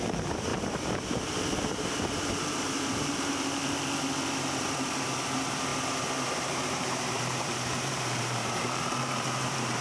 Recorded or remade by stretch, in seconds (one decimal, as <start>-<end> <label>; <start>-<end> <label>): 0.0-3.6 remade; 3.6-4.6 recorded; 4.6-9.8 remade